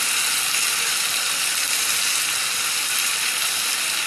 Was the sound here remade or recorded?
recorded